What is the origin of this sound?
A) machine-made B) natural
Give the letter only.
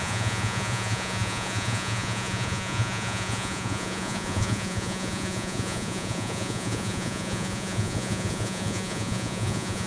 A